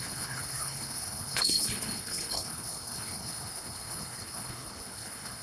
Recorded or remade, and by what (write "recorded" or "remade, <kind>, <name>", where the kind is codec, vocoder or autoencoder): remade, codec, HILCodec